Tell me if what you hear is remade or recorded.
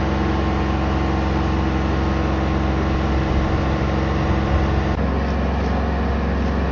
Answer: recorded